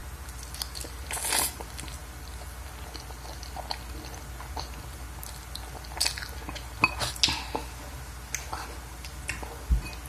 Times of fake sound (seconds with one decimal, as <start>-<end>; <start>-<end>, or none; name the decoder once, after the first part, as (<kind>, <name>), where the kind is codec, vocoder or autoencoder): none